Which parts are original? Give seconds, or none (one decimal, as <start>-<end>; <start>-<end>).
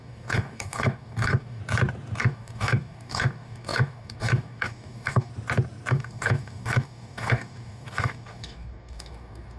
1.6-2.2; 5.3-5.9